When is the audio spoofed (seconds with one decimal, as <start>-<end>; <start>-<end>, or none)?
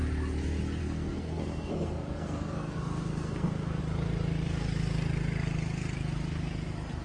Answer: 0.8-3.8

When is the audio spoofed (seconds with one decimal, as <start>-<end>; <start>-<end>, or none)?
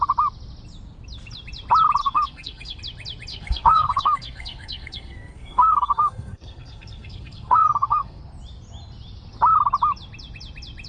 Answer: 2.0-2.8; 3.3-8.2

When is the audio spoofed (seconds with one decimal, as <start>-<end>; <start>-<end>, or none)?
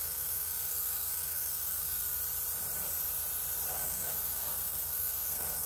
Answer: 0.0-2.2; 3.7-5.7